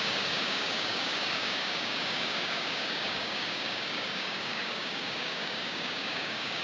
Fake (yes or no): yes